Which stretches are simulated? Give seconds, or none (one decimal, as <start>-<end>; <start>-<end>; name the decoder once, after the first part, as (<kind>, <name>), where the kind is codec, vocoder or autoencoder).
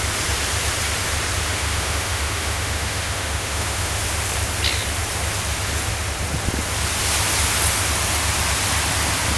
1.5-4.0 (autoencoder, DAC-VAE)